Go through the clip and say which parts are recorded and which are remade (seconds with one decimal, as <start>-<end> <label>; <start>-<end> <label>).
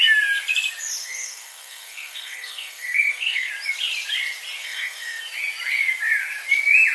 0.0-1.0 recorded; 1.0-3.5 remade; 3.5-4.6 recorded; 4.6-5.2 remade; 5.2-6.9 recorded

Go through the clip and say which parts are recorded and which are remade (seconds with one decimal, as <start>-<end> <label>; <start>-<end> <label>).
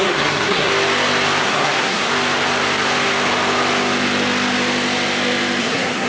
0.0-0.7 remade; 0.7-1.4 recorded; 1.4-2.1 remade; 2.1-5.6 recorded; 5.6-6.1 remade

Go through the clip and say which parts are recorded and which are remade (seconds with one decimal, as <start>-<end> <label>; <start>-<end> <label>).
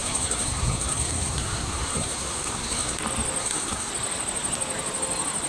0.0-3.0 remade; 3.0-3.4 recorded; 3.4-3.9 remade; 3.9-5.5 recorded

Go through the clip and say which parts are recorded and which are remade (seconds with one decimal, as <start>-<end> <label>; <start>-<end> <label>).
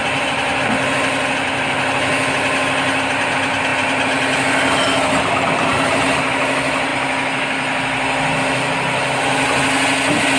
0.0-10.4 recorded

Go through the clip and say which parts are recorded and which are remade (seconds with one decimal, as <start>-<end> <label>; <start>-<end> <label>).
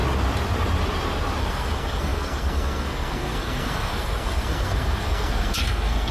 0.0-1.4 recorded; 1.4-6.1 remade